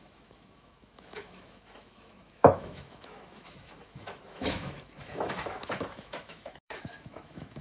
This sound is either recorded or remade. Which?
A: remade